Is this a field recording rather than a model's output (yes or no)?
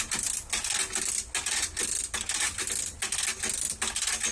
yes